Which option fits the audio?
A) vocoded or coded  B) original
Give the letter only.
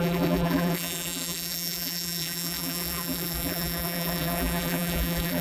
A